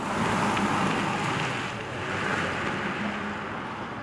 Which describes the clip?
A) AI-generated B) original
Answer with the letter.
B